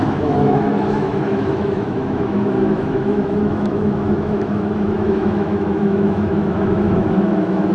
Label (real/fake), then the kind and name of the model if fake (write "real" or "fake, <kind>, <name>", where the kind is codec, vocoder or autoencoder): fake, autoencoder, DAC-VAE